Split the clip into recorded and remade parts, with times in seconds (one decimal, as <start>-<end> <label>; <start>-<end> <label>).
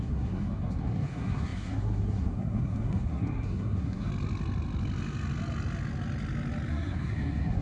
0.0-4.1 remade; 4.1-6.7 recorded; 6.7-7.6 remade